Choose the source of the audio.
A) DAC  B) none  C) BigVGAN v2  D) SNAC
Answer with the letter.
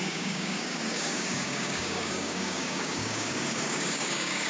A